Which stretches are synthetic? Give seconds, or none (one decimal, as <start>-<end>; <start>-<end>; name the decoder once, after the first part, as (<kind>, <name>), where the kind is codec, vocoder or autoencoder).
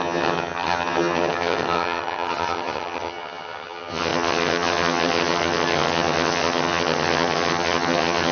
0.0-8.3 (vocoder, HiFi-GAN)